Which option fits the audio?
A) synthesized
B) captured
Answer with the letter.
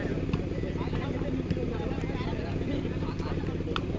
B